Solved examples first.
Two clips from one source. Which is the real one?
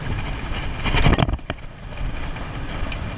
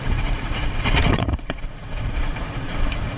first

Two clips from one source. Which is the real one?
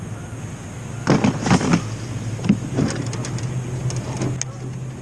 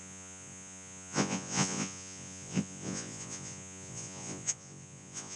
first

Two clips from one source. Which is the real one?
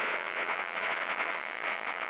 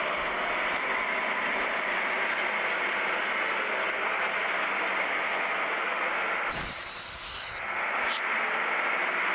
second